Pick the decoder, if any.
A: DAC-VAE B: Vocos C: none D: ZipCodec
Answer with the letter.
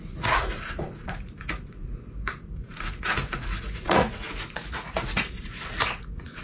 B